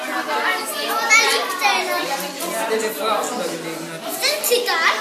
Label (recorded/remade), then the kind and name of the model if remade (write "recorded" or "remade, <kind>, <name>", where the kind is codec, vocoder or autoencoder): recorded